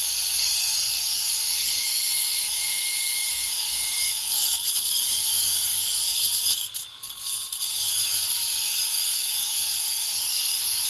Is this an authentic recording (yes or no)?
no